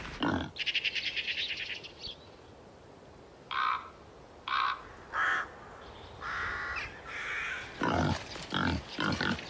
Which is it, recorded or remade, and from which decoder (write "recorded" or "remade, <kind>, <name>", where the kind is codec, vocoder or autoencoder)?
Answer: recorded